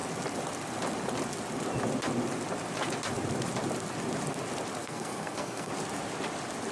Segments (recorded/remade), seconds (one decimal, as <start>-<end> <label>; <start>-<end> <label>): 0.0-4.8 recorded; 4.8-5.7 remade; 5.7-6.7 recorded